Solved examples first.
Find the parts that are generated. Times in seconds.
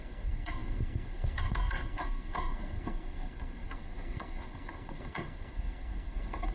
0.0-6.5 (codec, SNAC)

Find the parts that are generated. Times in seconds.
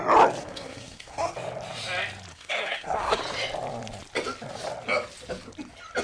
0.4-1.3 (codec, SNAC); 2.3-3.2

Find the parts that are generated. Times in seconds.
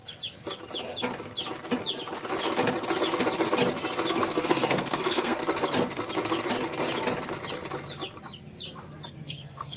4.1-5.4 (codec, SNAC); 9.1-9.8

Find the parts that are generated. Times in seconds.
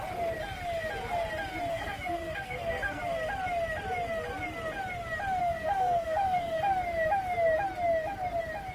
1.7-3.0 (codec, SNAC); 5.4-6.6